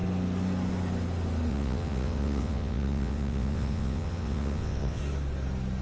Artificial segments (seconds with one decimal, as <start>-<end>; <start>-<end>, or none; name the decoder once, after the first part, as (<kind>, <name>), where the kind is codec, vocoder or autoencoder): 1.5-5.0 (vocoder, WaveNeXt)